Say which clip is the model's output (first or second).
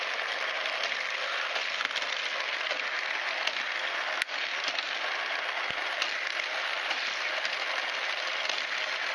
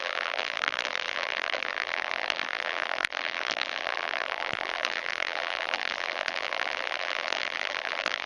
second